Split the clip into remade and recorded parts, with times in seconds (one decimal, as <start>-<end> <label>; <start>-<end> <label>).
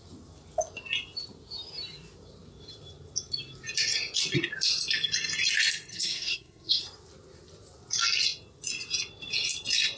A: 0.0-5.9 recorded; 5.9-6.8 remade; 6.8-10.0 recorded